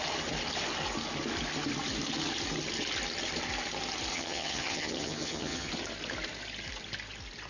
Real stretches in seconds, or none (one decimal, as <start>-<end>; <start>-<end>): 0.0-4.1; 5.7-7.5